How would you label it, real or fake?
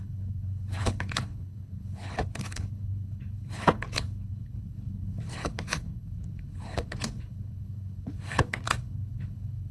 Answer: fake